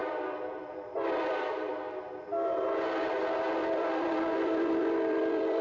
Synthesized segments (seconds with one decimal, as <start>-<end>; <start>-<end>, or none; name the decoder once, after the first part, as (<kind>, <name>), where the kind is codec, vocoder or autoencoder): 0.0-1.7 (vocoder, BigVGAN v2); 3.6-5.6